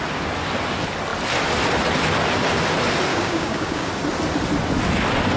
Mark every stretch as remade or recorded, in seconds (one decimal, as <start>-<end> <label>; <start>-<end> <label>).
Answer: 0.0-3.1 recorded; 3.1-3.9 remade; 3.9-5.4 recorded